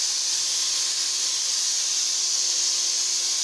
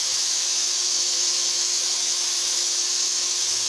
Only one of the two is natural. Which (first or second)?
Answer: first